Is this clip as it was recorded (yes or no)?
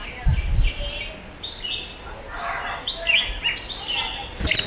yes